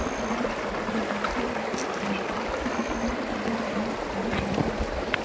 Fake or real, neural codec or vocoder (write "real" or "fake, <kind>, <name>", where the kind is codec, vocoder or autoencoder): real